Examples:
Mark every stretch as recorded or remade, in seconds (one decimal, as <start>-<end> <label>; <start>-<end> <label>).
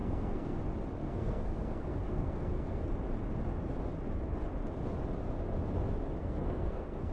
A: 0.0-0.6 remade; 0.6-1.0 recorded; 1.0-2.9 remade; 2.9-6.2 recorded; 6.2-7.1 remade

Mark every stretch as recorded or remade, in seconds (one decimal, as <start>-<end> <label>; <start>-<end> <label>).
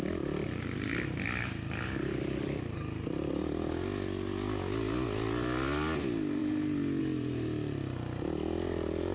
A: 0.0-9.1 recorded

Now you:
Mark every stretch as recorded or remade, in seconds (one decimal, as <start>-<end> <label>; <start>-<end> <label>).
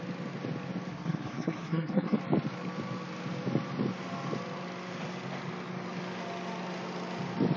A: 0.0-0.9 recorded; 0.9-2.2 remade; 2.2-7.6 recorded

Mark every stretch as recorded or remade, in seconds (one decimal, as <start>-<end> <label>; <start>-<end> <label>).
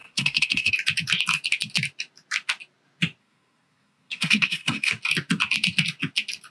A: 0.0-0.7 remade; 0.7-3.2 recorded; 3.2-4.9 remade; 4.9-6.5 recorded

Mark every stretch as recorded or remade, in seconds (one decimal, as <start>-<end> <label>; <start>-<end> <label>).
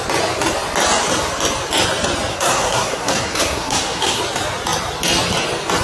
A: 0.0-2.3 recorded; 2.3-4.2 remade; 4.2-5.8 recorded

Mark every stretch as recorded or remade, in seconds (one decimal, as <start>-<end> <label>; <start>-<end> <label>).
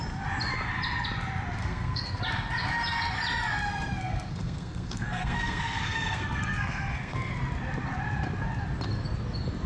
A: 0.0-1.6 recorded; 1.6-2.2 remade; 2.2-3.7 recorded; 3.7-7.3 remade; 7.3-9.7 recorded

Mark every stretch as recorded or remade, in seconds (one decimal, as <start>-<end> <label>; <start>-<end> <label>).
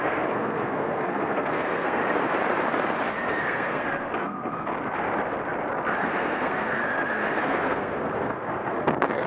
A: 0.0-2.0 remade; 2.0-3.4 recorded; 3.4-4.5 remade; 4.5-6.0 recorded; 6.0-6.8 remade; 6.8-7.4 recorded; 7.4-9.3 remade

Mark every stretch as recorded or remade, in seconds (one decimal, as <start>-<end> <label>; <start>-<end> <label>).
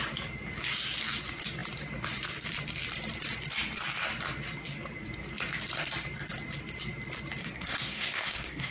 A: 0.0-7.4 recorded; 7.4-8.7 remade